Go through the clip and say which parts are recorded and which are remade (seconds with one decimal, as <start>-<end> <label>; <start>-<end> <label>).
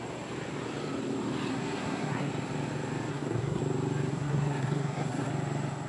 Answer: 0.0-1.5 recorded; 1.5-2.3 remade; 2.3-3.1 recorded; 3.1-3.6 remade; 3.6-4.1 recorded; 4.1-5.3 remade; 5.3-5.9 recorded